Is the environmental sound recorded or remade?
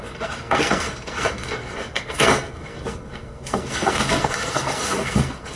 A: remade